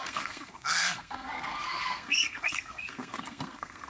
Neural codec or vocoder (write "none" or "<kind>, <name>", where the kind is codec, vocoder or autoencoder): codec, SNAC